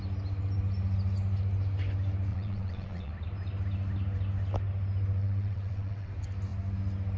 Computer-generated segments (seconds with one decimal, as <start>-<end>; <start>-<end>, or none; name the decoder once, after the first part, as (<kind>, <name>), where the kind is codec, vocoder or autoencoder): 2.3-3.1 (vocoder, WaveNeXt); 5.2-6.1